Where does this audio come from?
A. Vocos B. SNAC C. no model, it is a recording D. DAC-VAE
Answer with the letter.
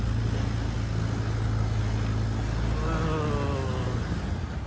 C